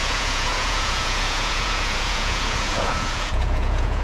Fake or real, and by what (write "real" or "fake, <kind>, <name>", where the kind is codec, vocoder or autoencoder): fake, vocoder, Vocos